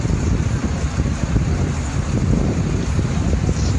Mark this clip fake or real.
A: real